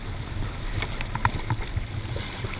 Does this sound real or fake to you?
real